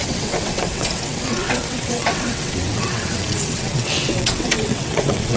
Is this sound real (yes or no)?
no